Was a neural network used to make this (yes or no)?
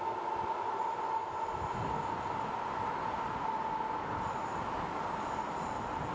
no